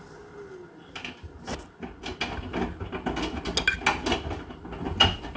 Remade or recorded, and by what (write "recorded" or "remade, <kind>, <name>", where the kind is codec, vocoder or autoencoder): recorded